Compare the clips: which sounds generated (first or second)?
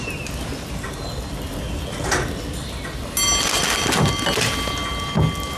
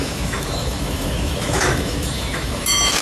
second